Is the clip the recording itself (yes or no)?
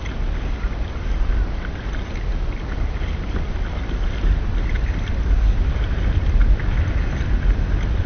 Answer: yes